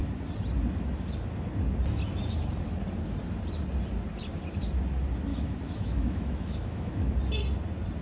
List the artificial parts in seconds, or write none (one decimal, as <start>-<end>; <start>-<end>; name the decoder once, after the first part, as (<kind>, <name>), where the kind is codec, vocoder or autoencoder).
5.3-7.1 (autoencoder, DAC-VAE)